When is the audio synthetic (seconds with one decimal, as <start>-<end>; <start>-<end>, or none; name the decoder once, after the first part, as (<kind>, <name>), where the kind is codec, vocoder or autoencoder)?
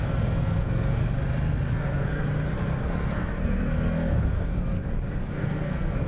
0.0-1.0 (codec, SNAC); 1.7-2.2; 2.8-4.5; 5.2-6.1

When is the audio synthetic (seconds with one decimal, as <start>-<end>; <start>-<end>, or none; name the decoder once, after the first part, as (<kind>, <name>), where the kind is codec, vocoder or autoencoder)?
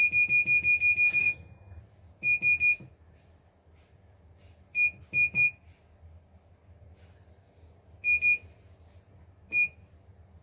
1.2-1.8 (codec, SNAC)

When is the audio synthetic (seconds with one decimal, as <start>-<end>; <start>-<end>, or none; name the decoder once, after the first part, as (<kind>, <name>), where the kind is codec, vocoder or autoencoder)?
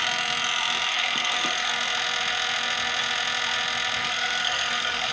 0.9-1.7 (codec, SNAC); 4.0-5.1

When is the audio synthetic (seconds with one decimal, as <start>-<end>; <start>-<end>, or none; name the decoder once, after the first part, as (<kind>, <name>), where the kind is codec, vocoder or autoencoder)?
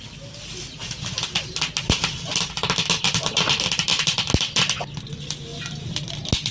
none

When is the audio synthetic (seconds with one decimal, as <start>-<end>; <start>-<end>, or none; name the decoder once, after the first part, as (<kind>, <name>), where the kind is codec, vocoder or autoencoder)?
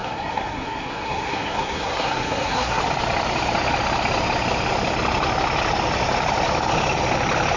0.0-2.8 (codec, SNAC)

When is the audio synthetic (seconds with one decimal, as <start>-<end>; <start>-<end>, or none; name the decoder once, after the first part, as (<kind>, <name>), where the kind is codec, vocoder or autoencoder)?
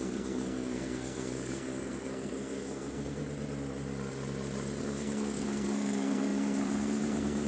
0.0-3.2 (codec, SNAC); 4.8-7.5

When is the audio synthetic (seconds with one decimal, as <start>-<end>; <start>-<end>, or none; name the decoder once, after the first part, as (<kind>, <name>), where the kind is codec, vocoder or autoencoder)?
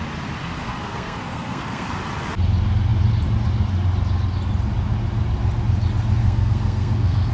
0.4-1.9 (codec, SNAC); 6.2-7.3